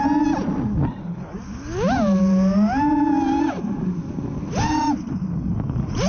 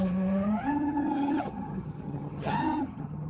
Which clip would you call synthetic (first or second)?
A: second